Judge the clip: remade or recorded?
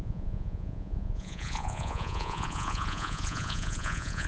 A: remade